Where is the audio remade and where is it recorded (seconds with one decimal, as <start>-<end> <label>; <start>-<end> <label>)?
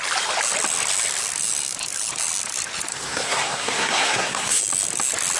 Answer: 0.0-2.9 recorded; 2.9-4.6 remade; 4.6-5.4 recorded